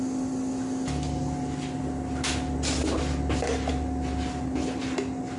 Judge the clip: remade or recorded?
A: recorded